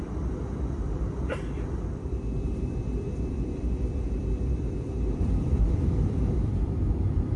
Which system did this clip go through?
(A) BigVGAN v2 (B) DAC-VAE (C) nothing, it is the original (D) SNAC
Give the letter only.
A